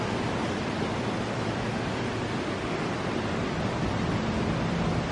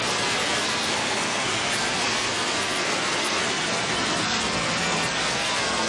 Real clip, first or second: first